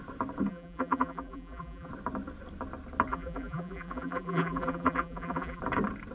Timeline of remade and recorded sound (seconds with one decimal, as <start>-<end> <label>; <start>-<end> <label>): 0.0-0.5 recorded; 0.5-1.9 remade; 1.9-3.1 recorded; 3.1-5.6 remade; 5.6-6.1 recorded